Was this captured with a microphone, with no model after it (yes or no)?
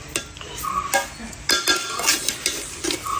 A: yes